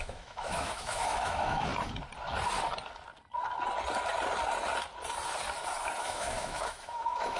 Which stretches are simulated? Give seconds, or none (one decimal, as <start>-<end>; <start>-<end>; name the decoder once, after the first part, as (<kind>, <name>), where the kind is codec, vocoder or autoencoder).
0.0-1.7 (autoencoder, DAC-VAE); 6.0-7.4